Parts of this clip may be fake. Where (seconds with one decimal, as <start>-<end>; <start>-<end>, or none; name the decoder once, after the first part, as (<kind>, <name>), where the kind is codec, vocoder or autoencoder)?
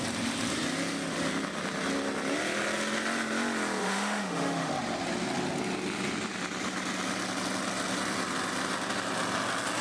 3.8-4.7 (autoencoder, DAC-VAE)